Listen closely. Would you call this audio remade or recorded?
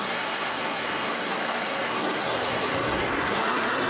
remade